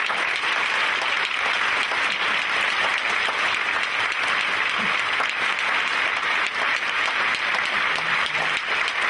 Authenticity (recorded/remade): recorded